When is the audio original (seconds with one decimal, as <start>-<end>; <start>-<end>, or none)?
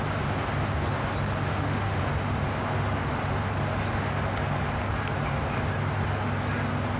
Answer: 0.0-1.5; 2.0-7.0